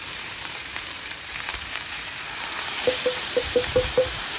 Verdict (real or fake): fake